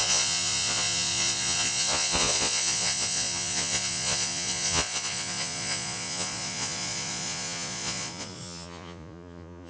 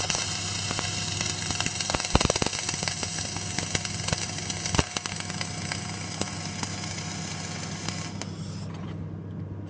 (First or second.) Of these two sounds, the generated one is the first